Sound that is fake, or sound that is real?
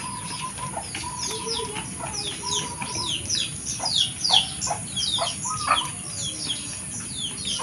real